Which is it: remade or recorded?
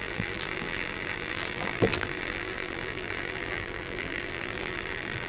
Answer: remade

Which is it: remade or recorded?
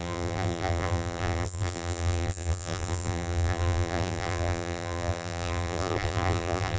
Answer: remade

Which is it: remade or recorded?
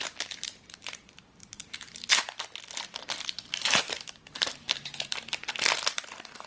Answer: recorded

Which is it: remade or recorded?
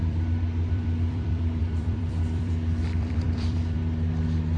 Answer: remade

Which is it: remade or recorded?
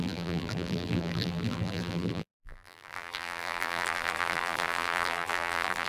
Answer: remade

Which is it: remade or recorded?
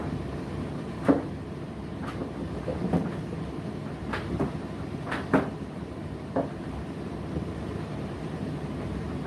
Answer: remade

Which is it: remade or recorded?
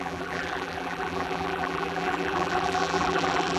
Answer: remade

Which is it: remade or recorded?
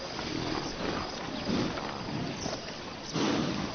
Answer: recorded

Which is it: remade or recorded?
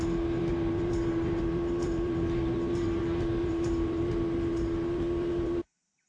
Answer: remade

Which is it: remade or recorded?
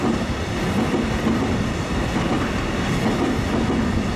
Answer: recorded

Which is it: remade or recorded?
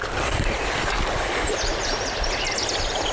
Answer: remade